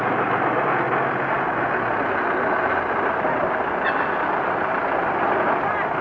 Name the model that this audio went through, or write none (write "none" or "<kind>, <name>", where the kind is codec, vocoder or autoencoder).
none